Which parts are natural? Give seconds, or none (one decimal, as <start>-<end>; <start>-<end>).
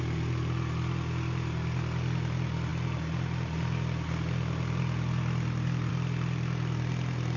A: 0.0-7.4